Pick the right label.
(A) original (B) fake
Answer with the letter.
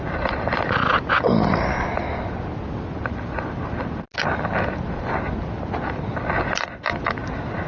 A